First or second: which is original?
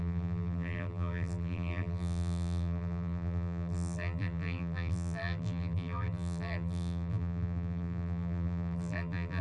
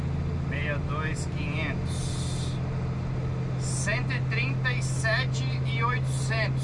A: second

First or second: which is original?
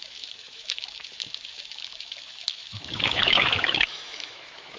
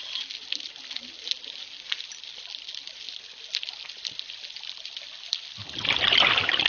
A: second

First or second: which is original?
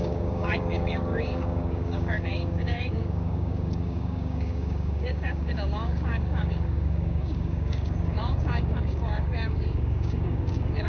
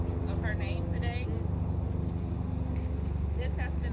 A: second